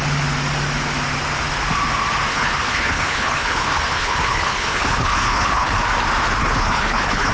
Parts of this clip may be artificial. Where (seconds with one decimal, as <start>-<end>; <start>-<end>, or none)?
2.3-5.8; 6.4-7.3

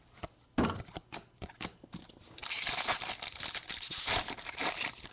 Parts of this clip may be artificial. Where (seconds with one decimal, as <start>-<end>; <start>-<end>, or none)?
none

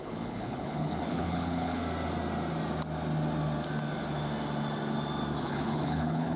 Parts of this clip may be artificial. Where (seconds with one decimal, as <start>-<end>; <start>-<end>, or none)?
0.0-1.8; 5.4-6.4

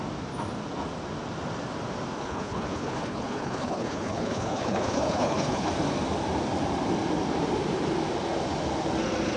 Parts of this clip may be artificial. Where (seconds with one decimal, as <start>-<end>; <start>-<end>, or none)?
2.2-5.7

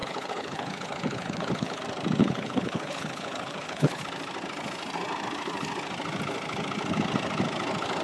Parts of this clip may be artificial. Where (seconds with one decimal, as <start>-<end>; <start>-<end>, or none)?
0.0-1.8; 2.2-4.0

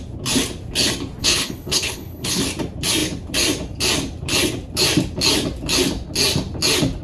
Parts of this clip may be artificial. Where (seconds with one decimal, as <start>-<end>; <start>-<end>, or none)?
1.2-2.4

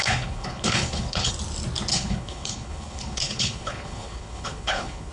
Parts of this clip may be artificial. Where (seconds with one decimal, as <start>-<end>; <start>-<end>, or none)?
0.0-1.3; 1.9-5.1

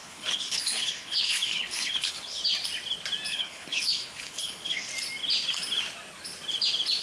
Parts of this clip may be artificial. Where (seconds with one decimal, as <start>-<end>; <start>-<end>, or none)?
0.0-2.4; 3.3-4.9